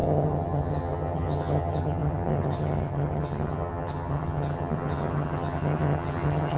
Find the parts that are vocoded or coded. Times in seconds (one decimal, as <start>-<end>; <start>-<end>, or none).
0.0-6.6